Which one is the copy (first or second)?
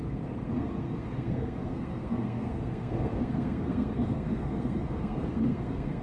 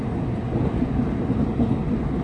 first